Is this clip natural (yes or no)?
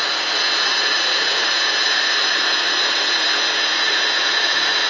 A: no